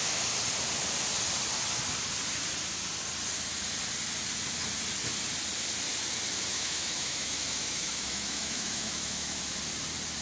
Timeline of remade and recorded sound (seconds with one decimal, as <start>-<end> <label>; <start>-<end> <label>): 0.0-6.5 recorded; 6.5-9.6 remade; 9.6-10.2 recorded